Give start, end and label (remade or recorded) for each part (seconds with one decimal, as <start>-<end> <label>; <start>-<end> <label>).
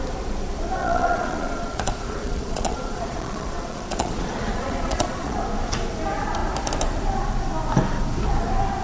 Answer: 0.0-0.8 recorded; 0.8-5.4 remade; 5.4-8.8 recorded